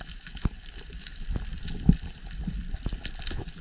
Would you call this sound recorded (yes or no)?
yes